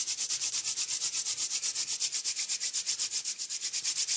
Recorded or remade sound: recorded